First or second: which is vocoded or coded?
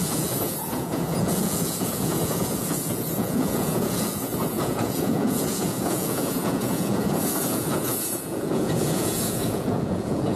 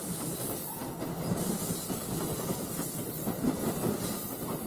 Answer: first